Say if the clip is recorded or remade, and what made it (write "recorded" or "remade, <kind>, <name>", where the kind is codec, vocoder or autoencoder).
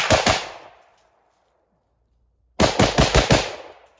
recorded